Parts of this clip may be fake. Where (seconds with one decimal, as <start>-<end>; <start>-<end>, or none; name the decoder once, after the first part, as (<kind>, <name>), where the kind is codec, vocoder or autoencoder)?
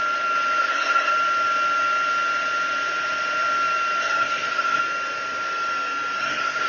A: 0.6-1.1 (codec, SNAC); 4.0-4.8; 6.2-6.7